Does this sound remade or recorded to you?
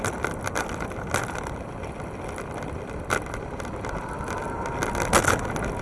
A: recorded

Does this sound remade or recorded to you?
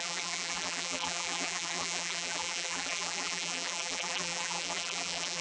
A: remade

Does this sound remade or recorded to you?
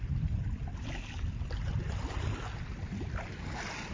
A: recorded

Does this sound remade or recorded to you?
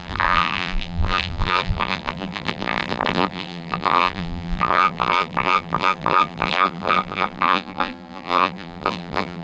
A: remade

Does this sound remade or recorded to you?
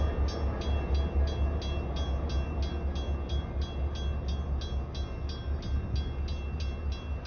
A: recorded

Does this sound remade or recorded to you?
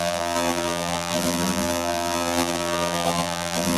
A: remade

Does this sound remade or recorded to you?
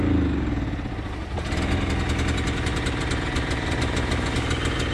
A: recorded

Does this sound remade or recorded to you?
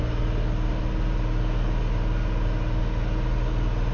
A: recorded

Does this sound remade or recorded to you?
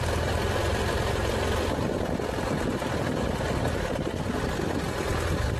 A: recorded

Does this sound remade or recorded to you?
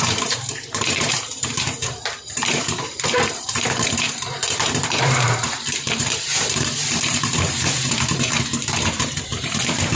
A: remade